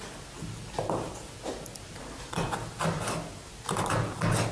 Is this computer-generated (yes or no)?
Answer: no